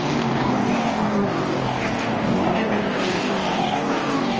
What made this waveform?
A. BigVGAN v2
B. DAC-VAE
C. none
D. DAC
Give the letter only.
D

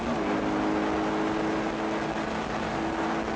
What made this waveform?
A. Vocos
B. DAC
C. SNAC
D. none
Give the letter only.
D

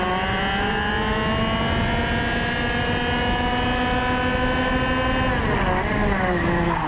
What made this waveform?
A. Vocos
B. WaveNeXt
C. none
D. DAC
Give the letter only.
C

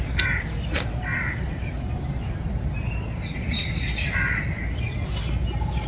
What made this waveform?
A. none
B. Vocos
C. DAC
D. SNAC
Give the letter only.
A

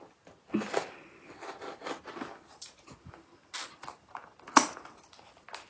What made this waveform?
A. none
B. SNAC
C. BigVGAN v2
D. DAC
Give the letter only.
A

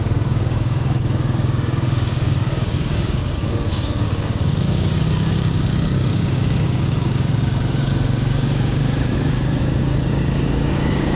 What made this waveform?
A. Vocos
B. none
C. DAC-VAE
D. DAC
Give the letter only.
D